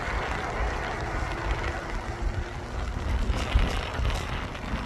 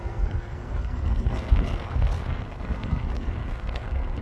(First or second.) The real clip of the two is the first